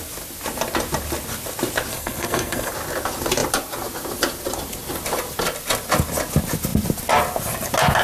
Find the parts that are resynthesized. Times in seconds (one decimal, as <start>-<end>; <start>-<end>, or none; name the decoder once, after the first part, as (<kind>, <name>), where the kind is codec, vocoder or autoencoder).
1.9-2.7 (codec, SNAC)